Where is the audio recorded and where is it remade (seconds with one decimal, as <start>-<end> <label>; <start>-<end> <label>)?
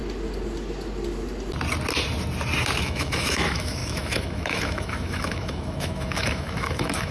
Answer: 0.0-2.8 recorded; 2.8-7.1 remade